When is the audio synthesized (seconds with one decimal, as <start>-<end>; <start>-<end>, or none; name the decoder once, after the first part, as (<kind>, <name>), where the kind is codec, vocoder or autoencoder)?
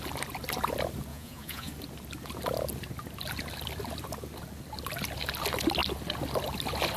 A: 1.1-1.7 (vocoder, Vocos)